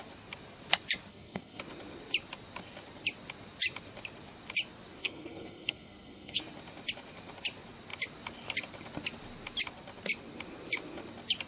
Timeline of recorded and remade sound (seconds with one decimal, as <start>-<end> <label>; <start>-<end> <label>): 0.0-1.1 recorded; 1.1-1.6 remade; 1.6-5.0 recorded; 5.0-6.4 remade; 6.4-11.5 recorded